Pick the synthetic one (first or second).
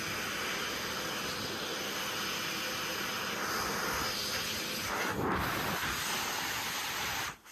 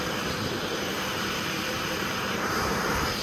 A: second